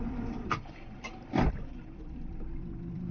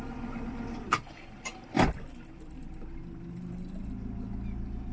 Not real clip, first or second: first